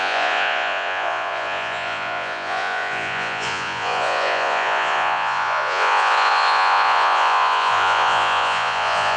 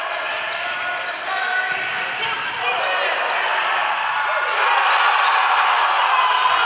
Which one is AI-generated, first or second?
first